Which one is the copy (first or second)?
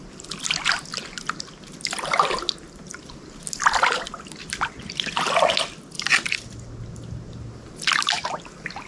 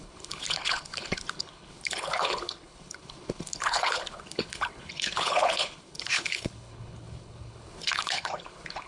second